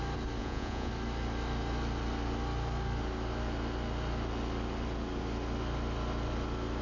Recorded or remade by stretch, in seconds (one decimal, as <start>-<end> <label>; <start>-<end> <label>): 0.0-0.4 recorded; 0.4-0.9 remade; 0.9-6.8 recorded